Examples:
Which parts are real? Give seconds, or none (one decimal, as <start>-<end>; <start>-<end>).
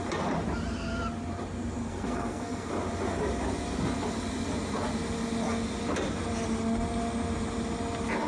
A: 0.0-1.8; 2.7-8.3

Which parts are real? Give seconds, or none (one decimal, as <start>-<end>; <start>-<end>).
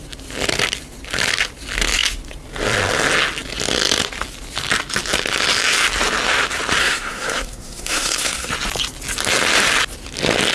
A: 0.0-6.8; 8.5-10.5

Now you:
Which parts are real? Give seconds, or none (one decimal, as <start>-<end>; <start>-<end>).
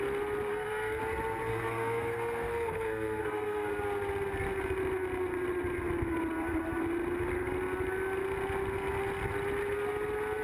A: 0.0-0.5; 1.0-1.5; 3.7-10.4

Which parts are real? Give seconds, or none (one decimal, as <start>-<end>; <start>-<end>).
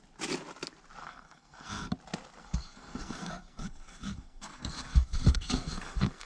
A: 0.0-1.0; 1.9-2.4